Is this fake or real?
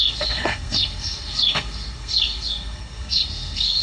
fake